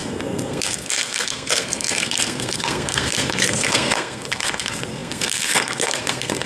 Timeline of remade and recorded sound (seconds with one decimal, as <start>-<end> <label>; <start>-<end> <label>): 0.0-6.5 remade